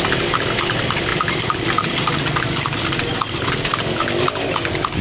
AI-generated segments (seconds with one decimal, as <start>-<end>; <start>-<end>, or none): none

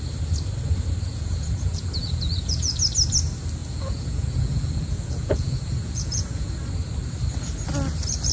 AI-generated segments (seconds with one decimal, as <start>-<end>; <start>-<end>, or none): 1.1-2.7; 3.6-6.5

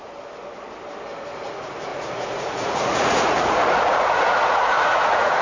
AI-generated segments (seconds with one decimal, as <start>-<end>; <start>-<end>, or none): 1.9-5.4

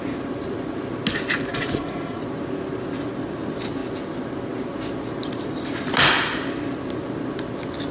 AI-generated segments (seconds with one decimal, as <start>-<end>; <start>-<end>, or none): 1.5-2.2

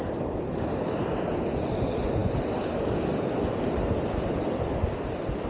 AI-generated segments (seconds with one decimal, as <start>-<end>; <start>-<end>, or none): none

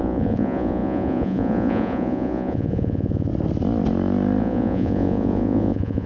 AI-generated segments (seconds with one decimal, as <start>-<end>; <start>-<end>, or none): 0.0-3.3; 4.4-6.1

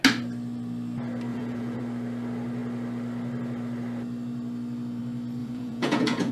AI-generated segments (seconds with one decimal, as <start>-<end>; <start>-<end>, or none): 1.3-1.8; 5.4-6.3

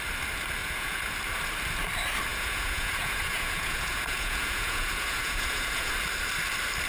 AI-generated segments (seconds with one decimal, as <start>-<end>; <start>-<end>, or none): 0.6-1.2; 2.3-5.9